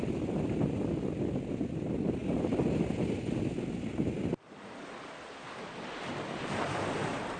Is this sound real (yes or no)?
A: yes